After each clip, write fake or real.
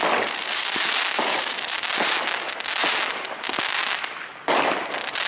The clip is real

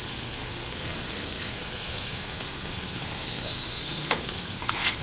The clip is fake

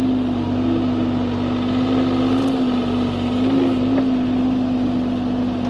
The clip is real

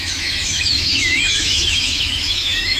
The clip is fake